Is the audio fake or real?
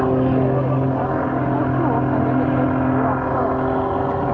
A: real